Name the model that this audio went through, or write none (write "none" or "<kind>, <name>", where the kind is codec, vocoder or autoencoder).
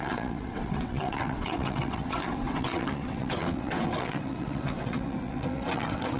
vocoder, WaveNeXt